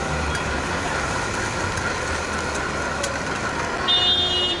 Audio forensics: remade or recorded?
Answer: recorded